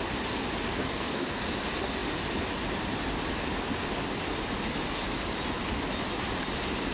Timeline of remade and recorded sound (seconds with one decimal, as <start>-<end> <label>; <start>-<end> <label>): 0.0-0.8 recorded; 0.8-1.4 remade; 1.4-6.9 recorded